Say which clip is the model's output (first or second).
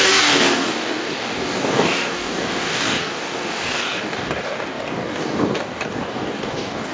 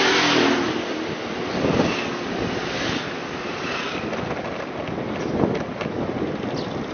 first